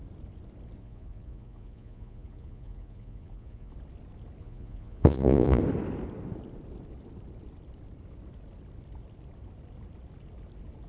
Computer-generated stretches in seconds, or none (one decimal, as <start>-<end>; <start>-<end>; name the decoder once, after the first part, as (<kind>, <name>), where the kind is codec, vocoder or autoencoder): 0.8-3.7 (vocoder, Vocos); 4.4-5.6